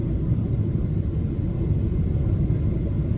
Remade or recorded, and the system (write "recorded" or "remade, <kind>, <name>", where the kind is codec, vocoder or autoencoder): recorded